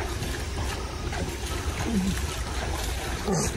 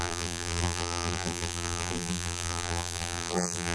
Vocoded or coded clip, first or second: second